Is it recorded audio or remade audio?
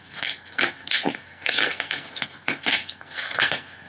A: remade